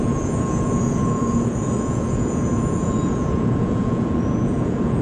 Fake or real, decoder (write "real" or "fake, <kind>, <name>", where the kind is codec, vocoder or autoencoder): fake, vocoder, Vocos